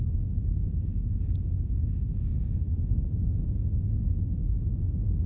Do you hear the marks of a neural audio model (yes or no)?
yes